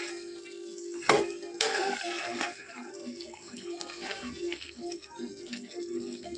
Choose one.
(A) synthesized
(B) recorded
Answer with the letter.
A